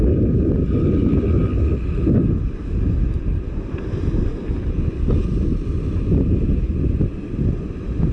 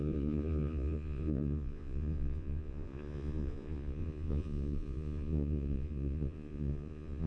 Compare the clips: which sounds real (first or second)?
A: first